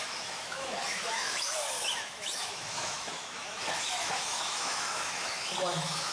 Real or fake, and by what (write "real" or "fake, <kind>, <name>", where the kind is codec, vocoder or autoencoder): fake, autoencoder, DAC-VAE